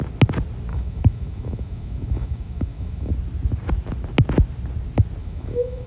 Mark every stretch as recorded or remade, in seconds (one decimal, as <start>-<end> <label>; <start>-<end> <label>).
0.0-0.7 recorded; 0.7-3.1 remade; 3.1-5.2 recorded; 5.2-5.9 remade